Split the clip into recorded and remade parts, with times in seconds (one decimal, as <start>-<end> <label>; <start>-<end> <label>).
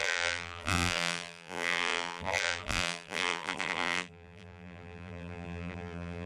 0.0-6.3 remade